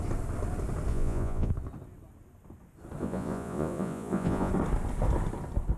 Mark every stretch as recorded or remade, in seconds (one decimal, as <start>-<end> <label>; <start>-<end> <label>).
0.0-0.9 recorded; 0.9-1.5 remade; 1.5-3.0 recorded; 3.0-4.5 remade; 4.5-5.8 recorded